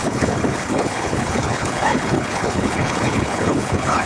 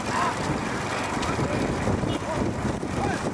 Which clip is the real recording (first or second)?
second